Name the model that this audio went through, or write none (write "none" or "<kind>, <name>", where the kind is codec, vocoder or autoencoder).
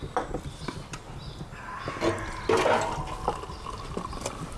none